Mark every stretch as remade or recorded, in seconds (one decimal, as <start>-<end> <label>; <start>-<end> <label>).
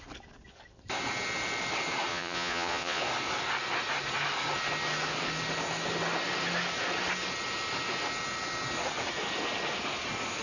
0.0-2.1 recorded; 2.1-3.0 remade; 3.0-10.4 recorded